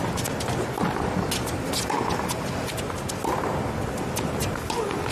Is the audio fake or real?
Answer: real